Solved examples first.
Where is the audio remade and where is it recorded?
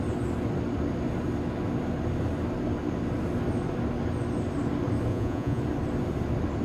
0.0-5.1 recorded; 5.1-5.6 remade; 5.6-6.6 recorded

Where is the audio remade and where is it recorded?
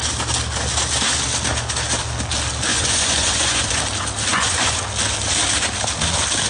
0.0-2.7 recorded; 2.7-3.8 remade; 3.8-4.3 recorded; 4.3-4.8 remade; 4.8-6.5 recorded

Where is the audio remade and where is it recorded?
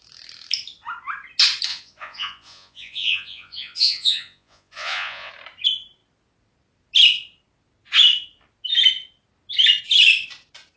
0.0-1.7 recorded; 1.7-5.3 remade; 5.3-10.8 recorded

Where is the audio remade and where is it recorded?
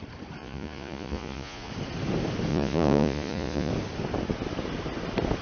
0.0-0.4 recorded; 0.4-1.7 remade; 1.7-2.5 recorded; 2.5-3.7 remade; 3.7-5.4 recorded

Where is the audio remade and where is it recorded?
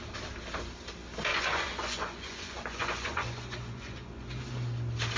0.0-1.3 recorded; 1.3-4.4 remade; 4.4-5.2 recorded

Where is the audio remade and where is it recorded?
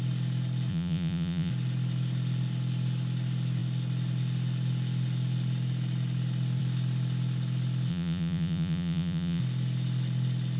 0.0-0.7 recorded; 0.7-1.5 remade; 1.5-7.9 recorded; 7.9-9.4 remade; 9.4-10.6 recorded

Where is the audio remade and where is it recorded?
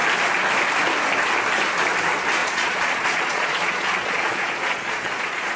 0.0-2.4 recorded; 2.4-5.6 remade